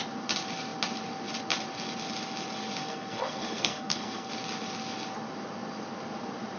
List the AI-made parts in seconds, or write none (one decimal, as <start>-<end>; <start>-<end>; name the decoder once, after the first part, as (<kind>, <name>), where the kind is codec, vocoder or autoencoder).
2.8-4.3 (codec, SNAC)